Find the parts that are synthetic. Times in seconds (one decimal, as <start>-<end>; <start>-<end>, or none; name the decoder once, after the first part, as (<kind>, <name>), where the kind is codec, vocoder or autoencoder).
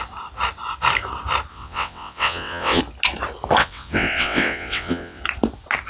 1.5-2.8 (vocoder, WaveNeXt); 3.6-5.2